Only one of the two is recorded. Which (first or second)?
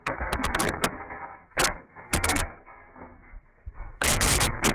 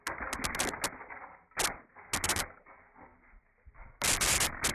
second